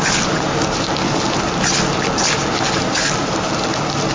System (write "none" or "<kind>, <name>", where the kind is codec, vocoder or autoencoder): none